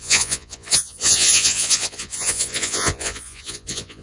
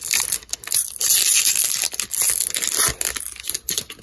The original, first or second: second